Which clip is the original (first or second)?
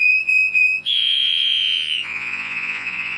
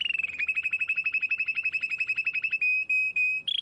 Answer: second